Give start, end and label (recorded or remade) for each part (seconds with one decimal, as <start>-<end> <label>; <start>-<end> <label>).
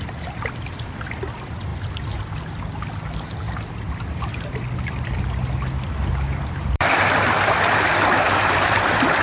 0.0-1.7 remade; 1.7-3.7 recorded; 3.7-9.2 remade